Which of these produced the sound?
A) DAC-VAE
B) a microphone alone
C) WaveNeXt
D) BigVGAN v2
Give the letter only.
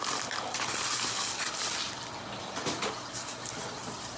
B